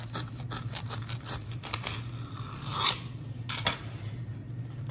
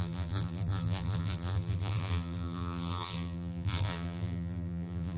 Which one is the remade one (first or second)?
second